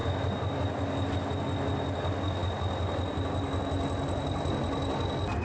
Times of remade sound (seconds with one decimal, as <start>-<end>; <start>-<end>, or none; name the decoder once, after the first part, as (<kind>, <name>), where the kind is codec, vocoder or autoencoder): none